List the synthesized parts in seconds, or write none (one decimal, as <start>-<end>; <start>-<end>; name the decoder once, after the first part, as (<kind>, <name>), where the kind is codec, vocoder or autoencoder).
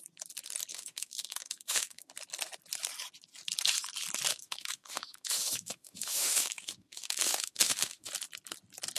0.7-2.1 (autoencoder, DAC-VAE); 4.3-8.1